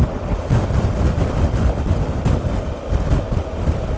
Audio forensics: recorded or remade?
recorded